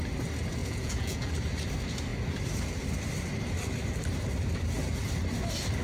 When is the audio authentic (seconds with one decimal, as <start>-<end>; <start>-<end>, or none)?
0.0-0.6; 1.3-5.8